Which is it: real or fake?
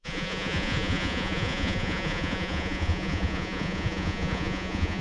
fake